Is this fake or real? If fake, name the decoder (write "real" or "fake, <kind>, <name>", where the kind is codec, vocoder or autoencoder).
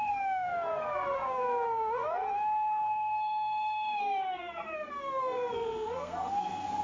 fake, codec, SNAC